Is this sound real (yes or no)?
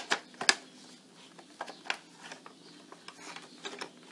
yes